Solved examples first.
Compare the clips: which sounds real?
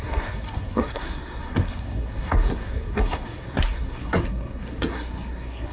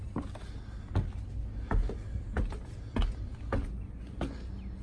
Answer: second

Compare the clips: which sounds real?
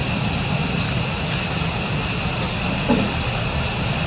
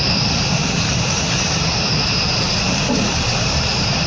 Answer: first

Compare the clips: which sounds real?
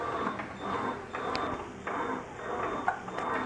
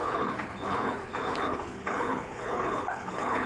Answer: first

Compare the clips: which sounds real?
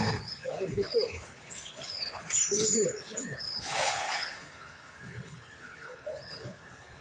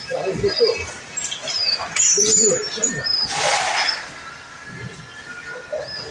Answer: second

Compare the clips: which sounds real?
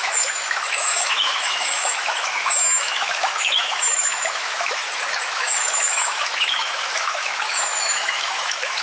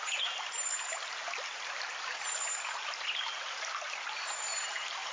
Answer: second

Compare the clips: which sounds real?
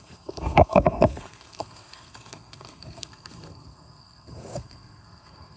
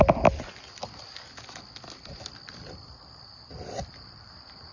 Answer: second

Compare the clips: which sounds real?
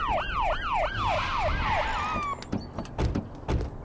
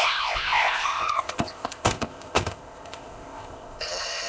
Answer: first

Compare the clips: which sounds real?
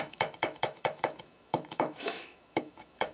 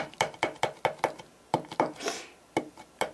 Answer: second